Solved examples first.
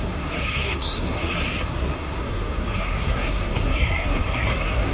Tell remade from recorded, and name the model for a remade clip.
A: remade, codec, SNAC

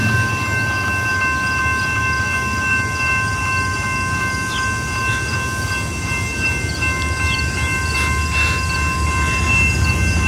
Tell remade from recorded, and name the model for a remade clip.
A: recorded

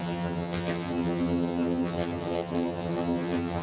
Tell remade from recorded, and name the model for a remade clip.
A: remade, vocoder, HiFi-GAN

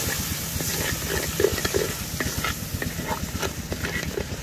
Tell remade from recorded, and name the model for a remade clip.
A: recorded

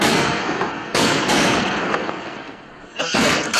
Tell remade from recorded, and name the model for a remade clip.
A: remade, codec, SNAC